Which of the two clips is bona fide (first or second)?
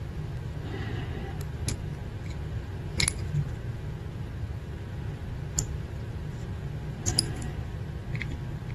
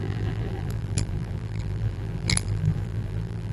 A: first